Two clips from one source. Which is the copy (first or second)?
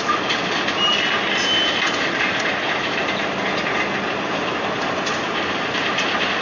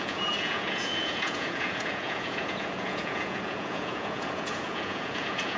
second